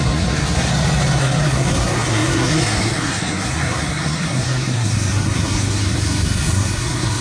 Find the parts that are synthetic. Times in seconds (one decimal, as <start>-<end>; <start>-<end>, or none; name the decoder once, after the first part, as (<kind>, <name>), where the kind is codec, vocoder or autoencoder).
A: 0.0-0.7 (codec, SNAC); 1.2-7.2

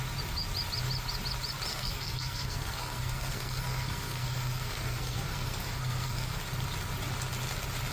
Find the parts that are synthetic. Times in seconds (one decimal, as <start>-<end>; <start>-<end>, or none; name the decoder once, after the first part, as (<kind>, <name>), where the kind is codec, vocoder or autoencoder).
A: 1.7-6.4 (codec, SNAC)

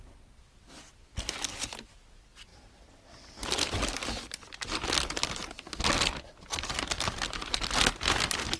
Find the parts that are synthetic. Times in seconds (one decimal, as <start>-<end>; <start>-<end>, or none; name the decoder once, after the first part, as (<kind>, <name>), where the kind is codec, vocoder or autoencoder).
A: 2.5-7.6 (vocoder, BigVGAN v2)

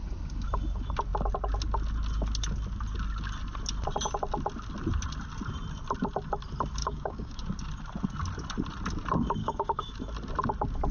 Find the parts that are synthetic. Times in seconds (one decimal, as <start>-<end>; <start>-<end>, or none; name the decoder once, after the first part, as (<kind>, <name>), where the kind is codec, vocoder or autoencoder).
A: 6.8-7.4 (codec, DAC); 9.4-9.9